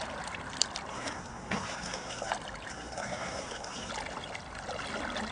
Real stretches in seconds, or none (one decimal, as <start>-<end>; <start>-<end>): 0.0-0.9; 2.3-2.7; 3.9-5.3